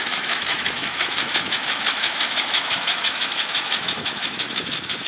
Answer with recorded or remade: remade